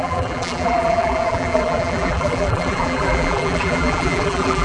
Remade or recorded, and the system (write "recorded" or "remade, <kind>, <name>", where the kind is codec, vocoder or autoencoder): remade, vocoder, BigVGAN v2